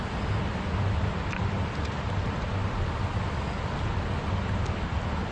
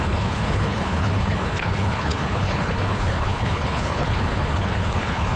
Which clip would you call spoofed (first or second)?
second